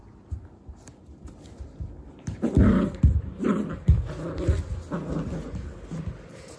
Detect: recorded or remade recorded